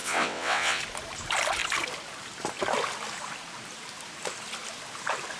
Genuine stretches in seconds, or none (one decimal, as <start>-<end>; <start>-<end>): 0.8-5.4